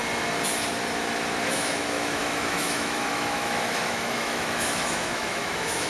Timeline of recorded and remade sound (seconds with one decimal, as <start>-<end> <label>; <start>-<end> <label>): 0.0-1.5 recorded; 1.5-5.9 remade